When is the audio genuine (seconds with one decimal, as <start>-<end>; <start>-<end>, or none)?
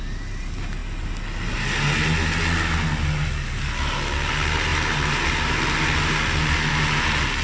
0.0-7.4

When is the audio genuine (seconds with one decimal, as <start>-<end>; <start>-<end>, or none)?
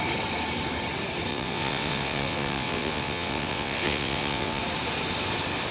0.0-1.3; 4.6-5.7